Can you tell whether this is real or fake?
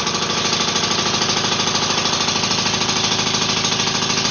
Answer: real